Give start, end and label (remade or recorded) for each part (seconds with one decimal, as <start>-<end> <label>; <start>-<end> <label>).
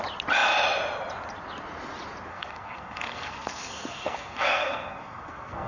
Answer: 0.0-2.3 recorded; 2.3-5.7 remade